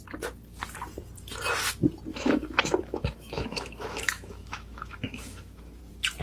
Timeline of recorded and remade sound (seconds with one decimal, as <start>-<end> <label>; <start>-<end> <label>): 0.0-2.1 recorded; 2.1-5.8 remade; 5.8-6.2 recorded